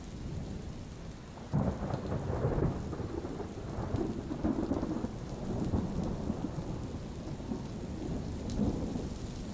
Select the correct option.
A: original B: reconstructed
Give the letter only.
A